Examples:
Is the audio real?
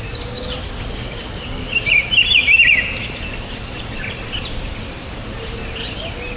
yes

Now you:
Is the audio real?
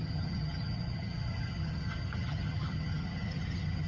no